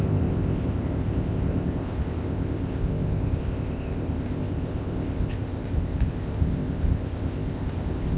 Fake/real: fake